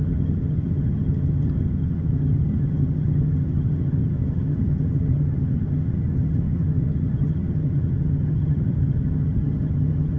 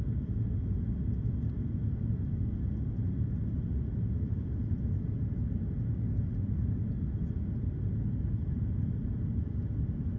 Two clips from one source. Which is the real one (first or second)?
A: second